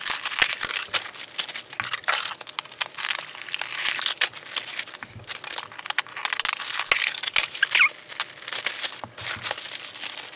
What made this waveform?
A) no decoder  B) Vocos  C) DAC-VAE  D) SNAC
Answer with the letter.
A